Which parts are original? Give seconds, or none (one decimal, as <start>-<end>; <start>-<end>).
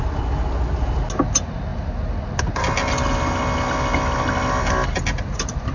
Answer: 0.0-5.7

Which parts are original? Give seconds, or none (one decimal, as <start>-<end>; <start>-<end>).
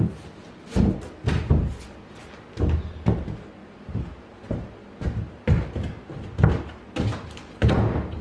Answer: 0.0-8.2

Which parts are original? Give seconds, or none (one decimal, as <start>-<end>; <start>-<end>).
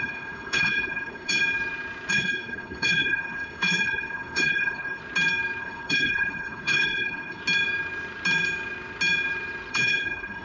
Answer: 1.4-2.1; 5.0-5.6; 7.4-9.7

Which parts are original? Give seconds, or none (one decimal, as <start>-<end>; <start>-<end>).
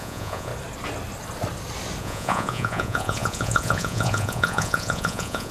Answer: 0.5-2.0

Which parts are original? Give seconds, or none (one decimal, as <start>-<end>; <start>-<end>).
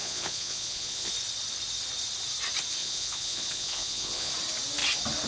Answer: 1.1-2.8; 4.3-5.3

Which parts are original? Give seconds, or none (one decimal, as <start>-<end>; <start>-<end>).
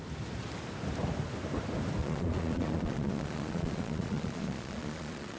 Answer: 0.0-2.0